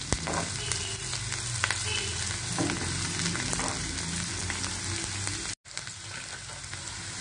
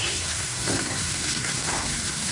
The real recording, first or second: first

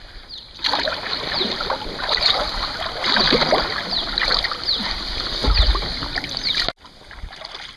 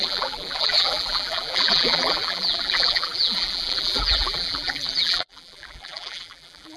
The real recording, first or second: first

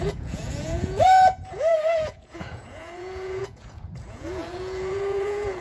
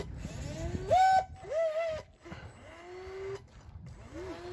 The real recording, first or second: second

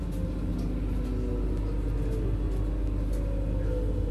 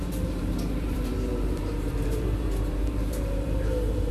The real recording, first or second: first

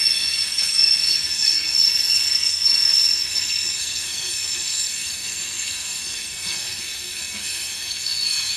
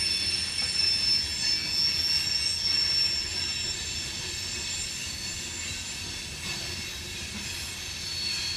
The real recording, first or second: second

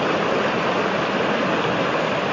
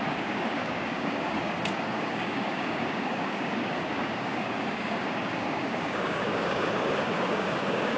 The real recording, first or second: first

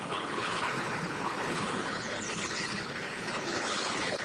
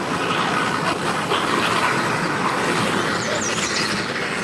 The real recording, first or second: second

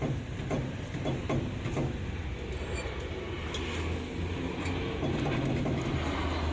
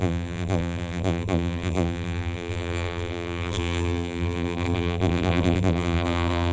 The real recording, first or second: first